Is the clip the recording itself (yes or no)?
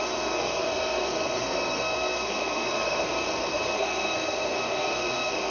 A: no